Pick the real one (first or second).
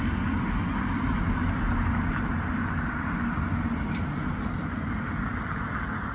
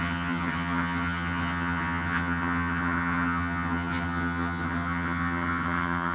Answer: first